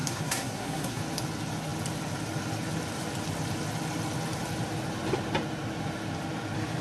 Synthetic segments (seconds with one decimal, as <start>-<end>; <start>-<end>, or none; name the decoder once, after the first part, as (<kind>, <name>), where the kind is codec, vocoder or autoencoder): 0.0-1.0 (codec, SNAC)